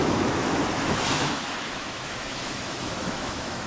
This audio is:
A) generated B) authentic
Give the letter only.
A